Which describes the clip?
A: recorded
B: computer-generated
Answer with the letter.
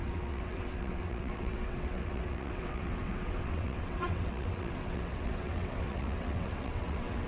B